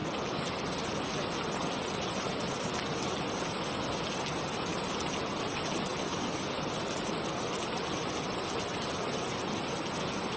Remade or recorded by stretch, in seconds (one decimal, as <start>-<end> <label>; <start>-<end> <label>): 0.0-10.4 recorded